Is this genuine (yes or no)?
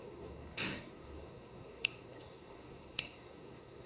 no